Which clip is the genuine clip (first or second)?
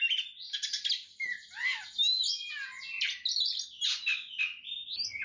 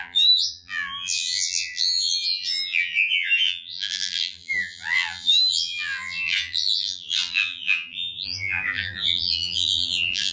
first